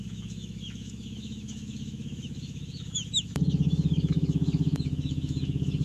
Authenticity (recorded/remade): remade